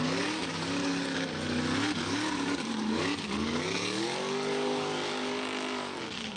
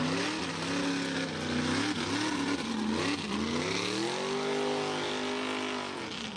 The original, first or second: second